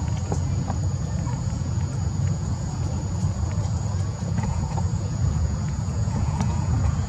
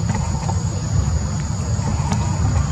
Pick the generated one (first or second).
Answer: first